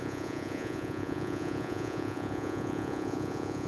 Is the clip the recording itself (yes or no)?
no